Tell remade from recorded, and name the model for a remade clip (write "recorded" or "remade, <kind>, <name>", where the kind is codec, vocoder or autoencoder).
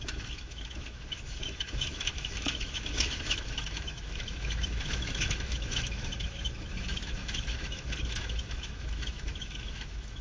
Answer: remade, autoencoder, DAC-VAE